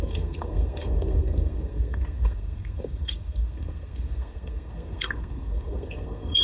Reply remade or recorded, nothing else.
remade